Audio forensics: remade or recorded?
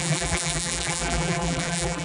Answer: remade